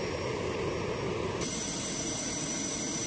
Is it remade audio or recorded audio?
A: recorded